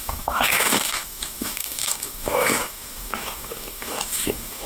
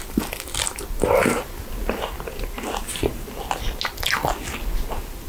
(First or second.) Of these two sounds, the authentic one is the second